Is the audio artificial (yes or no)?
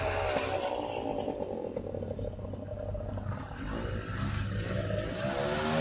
no